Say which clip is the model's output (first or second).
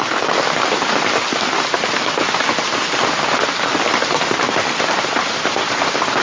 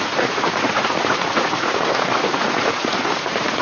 second